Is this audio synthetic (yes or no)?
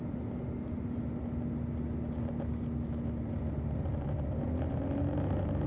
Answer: no